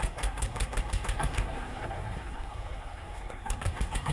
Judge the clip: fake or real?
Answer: fake